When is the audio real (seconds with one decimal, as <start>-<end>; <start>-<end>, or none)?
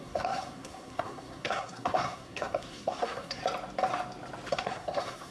3.4-4.5